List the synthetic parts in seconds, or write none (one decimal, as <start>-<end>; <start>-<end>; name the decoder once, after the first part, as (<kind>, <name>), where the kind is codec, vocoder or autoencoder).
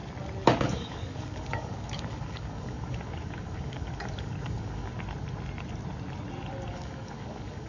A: 0.6-4.9 (codec, DAC); 6.7-7.7